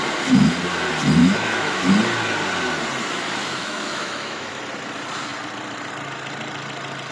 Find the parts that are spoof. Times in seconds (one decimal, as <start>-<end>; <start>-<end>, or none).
1.2-1.9; 3.4-4.6